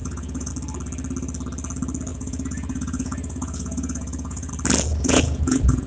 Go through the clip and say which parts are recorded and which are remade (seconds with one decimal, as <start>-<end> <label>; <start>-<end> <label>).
0.0-0.5 remade; 0.5-2.1 recorded; 2.1-4.5 remade; 4.5-4.9 recorded; 4.9-5.9 remade